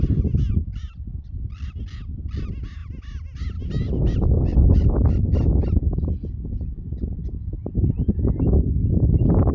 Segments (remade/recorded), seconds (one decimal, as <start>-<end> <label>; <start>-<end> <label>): 0.0-9.5 recorded